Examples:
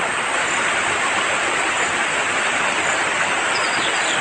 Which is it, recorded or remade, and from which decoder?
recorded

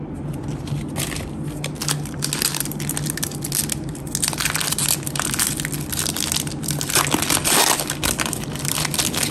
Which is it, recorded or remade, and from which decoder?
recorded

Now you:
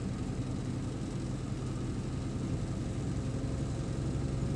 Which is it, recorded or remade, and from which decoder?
recorded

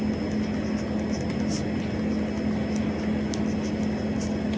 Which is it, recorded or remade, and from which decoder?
recorded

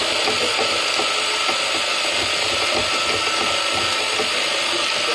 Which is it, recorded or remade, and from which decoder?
recorded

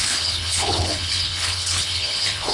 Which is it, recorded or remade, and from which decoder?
remade, codec, HILCodec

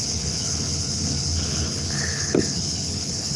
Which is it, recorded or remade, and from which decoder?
remade, codec, HILCodec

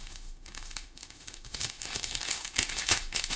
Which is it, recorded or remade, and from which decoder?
remade, autoencoder, DAC-VAE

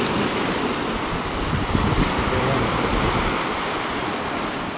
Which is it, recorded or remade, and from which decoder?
recorded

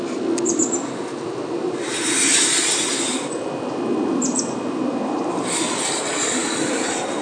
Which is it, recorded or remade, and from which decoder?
recorded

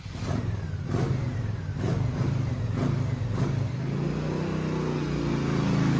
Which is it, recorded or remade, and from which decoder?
recorded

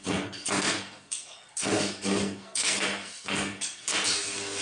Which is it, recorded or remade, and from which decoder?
remade, codec, SNAC